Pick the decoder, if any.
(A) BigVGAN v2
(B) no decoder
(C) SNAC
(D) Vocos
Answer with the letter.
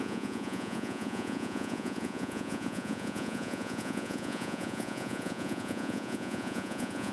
D